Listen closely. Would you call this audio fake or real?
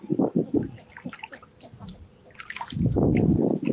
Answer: real